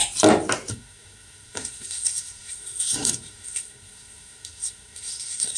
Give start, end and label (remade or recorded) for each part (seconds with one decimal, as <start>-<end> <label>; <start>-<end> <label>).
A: 0.0-0.7 recorded; 0.7-5.6 remade